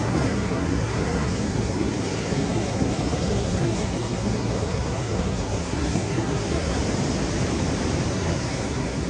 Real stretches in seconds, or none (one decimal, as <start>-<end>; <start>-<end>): 6.8-8.1